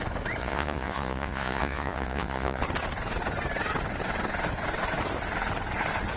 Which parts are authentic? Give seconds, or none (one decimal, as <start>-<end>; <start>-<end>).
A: 0.0-0.4; 2.6-6.2